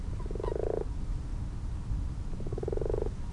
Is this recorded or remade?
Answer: recorded